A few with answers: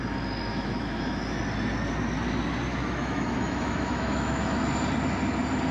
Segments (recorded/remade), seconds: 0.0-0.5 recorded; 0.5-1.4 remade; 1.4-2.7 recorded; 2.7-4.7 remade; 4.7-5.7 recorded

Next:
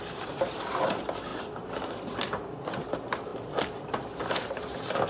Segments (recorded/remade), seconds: 0.0-5.1 recorded